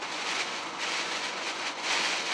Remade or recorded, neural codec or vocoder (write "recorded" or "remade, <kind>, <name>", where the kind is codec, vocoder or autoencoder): remade, vocoder, Vocos